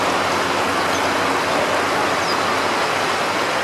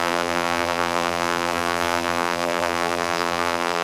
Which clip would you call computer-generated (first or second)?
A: second